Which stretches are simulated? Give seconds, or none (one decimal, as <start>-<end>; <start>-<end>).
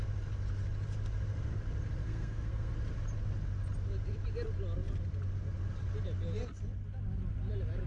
2.0-2.7